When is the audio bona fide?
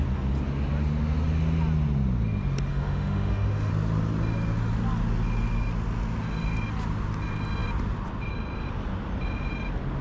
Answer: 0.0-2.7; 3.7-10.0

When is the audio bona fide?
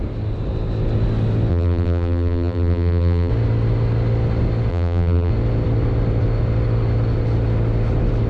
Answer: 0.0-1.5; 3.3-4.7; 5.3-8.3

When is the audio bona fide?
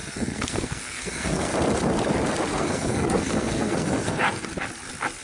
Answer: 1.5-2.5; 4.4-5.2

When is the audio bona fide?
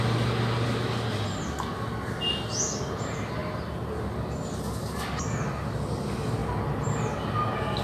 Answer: 0.0-7.8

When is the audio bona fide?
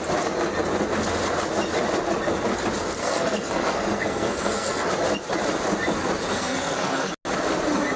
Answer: 0.0-3.0; 4.9-6.3; 7.1-8.0